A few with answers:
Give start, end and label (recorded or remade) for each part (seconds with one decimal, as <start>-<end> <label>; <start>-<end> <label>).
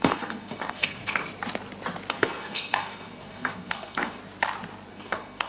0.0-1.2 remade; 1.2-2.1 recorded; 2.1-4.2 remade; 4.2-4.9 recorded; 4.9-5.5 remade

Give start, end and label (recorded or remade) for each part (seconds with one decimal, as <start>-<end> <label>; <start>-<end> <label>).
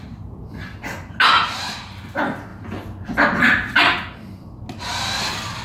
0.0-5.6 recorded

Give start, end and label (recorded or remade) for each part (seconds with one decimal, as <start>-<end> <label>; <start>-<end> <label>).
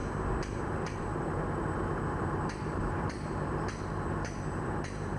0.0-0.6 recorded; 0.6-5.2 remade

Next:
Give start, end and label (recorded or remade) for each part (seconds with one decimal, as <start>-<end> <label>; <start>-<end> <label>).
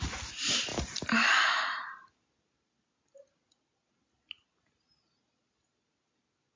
0.0-6.6 recorded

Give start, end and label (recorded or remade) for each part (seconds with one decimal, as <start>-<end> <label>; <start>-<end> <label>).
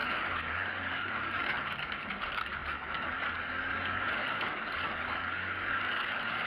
0.0-6.5 remade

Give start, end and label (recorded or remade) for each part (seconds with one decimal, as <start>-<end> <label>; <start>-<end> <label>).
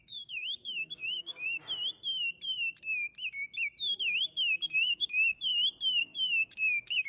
0.0-1.6 remade; 1.6-4.2 recorded; 4.2-5.5 remade; 5.5-6.0 recorded; 6.0-7.1 remade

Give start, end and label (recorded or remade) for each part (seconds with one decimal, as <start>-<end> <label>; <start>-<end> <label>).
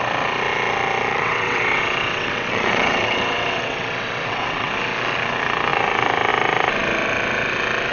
0.0-1.1 recorded; 1.1-4.7 remade; 4.7-7.9 recorded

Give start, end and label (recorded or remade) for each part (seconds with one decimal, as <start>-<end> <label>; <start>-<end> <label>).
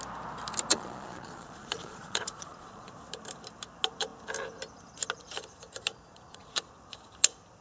0.0-0.7 recorded; 0.7-2.9 remade; 2.9-5.9 recorded; 5.9-6.7 remade; 6.7-7.6 recorded